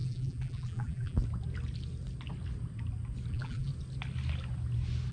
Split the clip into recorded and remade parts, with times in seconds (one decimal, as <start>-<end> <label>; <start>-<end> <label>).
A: 0.0-1.2 remade; 1.2-3.3 recorded; 3.3-3.7 remade; 3.7-5.1 recorded